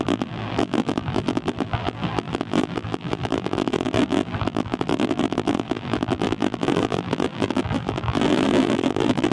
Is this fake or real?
fake